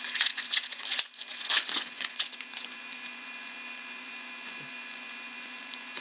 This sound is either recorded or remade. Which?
remade